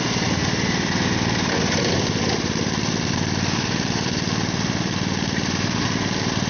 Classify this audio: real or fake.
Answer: real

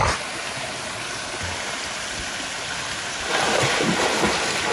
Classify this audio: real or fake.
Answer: real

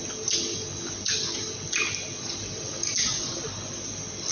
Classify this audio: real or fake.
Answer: real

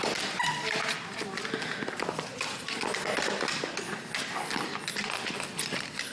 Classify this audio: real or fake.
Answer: real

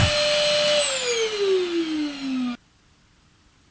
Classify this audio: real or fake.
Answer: real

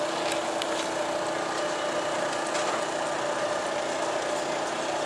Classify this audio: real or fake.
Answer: real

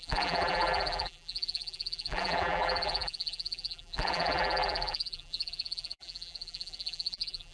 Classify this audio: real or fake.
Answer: fake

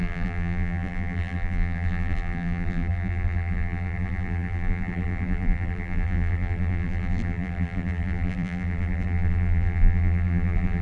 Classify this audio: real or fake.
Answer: fake